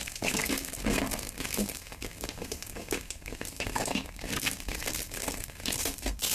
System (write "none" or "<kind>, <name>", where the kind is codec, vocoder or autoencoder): codec, SNAC